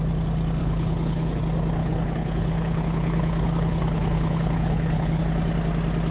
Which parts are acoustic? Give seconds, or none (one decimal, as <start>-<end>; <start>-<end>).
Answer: 0.0-0.6; 1.4-1.8; 5.2-6.1